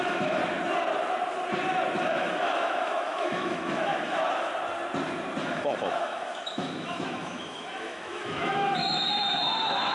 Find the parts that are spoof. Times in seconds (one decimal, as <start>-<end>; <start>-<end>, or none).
0.0-0.4; 2.0-4.5; 5.4-9.9